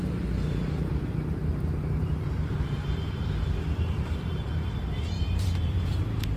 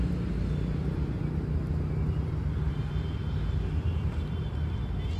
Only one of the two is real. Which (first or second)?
second